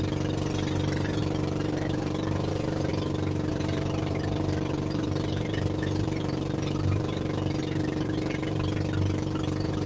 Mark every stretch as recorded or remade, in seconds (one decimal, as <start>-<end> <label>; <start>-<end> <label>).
0.0-2.9 remade; 2.9-3.5 recorded; 3.5-9.9 remade